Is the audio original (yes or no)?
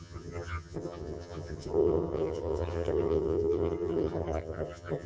no